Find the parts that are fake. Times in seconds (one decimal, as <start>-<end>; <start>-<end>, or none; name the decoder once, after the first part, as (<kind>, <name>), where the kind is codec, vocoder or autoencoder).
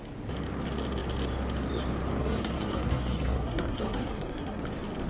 2.2-4.6 (codec, SNAC)